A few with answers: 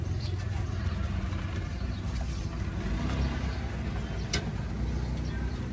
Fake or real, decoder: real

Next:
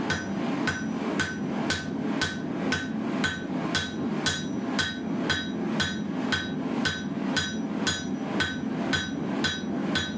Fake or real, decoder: real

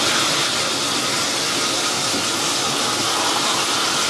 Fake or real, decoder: real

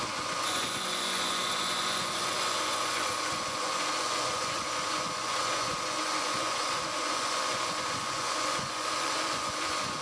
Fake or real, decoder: fake, vocoder, Vocos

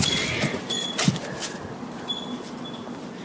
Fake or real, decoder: real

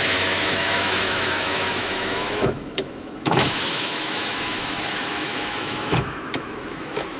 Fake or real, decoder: fake, autoencoder, DAC-VAE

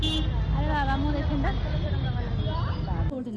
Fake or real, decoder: real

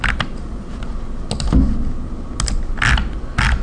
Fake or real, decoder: real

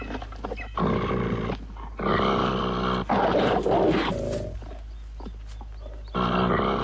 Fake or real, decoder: real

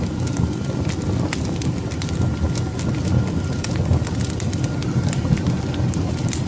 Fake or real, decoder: real